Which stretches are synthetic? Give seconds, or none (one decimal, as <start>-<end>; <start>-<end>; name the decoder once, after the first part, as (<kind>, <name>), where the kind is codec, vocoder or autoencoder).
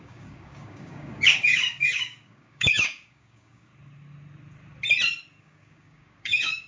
0.0-3.7 (codec, DAC); 5.4-6.7